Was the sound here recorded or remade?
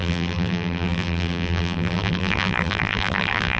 remade